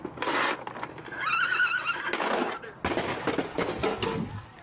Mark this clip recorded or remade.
recorded